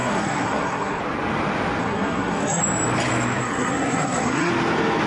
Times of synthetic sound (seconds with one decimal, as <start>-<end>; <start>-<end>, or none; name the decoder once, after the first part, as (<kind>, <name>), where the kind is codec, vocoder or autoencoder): 0.0-1.0 (codec, SNAC); 1.8-2.6; 3.4-4.5